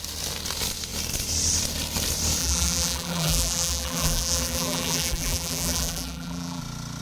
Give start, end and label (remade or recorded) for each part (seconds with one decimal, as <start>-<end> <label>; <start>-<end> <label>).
0.0-2.4 recorded; 2.4-6.6 remade; 6.6-7.0 recorded